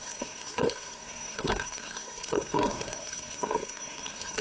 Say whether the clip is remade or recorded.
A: remade